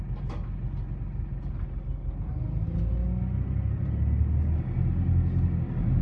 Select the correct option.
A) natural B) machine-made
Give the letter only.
A